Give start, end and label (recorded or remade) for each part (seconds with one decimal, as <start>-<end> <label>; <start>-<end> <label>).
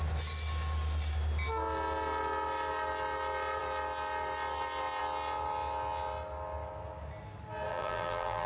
0.0-7.7 recorded; 7.7-8.5 remade